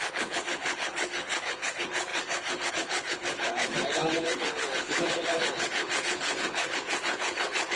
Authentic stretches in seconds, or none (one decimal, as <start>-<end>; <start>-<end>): none